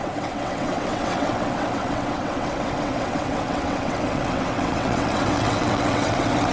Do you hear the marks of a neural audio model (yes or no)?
yes